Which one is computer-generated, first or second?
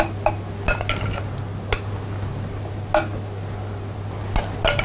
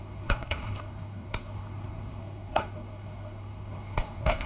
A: second